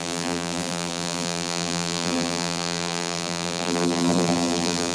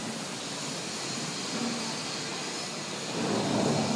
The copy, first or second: first